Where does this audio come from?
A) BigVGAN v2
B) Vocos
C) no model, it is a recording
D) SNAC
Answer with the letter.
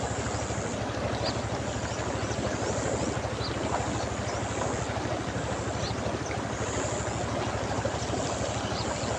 C